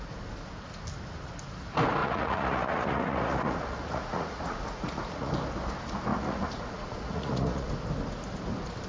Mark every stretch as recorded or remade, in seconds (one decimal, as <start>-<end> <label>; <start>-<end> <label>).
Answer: 0.0-2.0 recorded; 2.0-5.3 remade; 5.3-6.1 recorded; 6.1-7.7 remade; 7.7-8.9 recorded

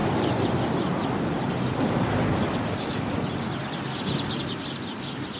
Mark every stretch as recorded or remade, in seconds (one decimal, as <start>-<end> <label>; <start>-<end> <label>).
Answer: 0.0-3.6 remade; 3.6-4.4 recorded; 4.4-5.4 remade

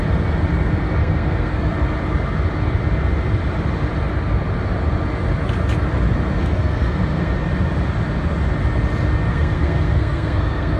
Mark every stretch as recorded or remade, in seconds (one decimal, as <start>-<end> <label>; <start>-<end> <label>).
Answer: 0.0-1.0 recorded; 1.0-1.7 remade; 1.7-6.4 recorded; 6.4-7.3 remade; 7.3-9.3 recorded; 9.3-10.8 remade

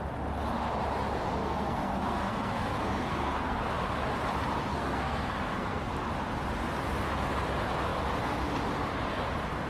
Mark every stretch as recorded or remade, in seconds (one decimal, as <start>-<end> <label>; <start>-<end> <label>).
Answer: 0.0-1.4 recorded; 1.4-3.7 remade; 3.7-4.7 recorded; 4.7-5.9 remade; 5.9-9.7 recorded

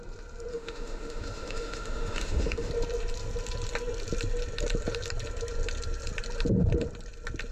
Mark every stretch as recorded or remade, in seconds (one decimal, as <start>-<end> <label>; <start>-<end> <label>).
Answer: 0.0-0.5 recorded; 0.5-2.7 remade; 2.7-7.5 recorded

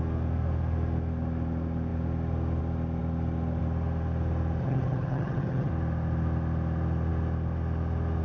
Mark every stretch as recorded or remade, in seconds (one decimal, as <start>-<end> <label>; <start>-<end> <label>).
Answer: 0.0-4.6 recorded; 4.6-5.7 remade; 5.7-8.2 recorded

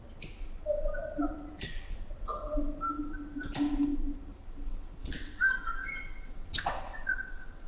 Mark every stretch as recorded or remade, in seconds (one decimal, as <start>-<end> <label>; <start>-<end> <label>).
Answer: 0.0-5.0 recorded; 5.0-7.7 remade

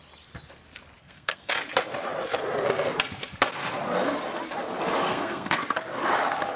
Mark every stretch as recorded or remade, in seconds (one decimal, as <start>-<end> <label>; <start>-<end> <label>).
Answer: 0.0-1.0 recorded; 1.0-1.5 remade; 1.5-5.1 recorded; 5.1-5.6 remade; 5.6-6.6 recorded